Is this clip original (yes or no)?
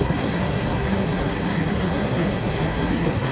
no